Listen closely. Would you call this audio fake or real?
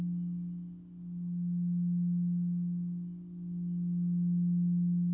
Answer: real